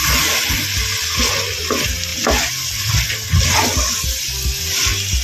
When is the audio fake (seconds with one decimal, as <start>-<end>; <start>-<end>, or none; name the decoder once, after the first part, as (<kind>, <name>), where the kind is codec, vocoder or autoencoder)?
2.1-2.9 (vocoder, BigVGAN v2)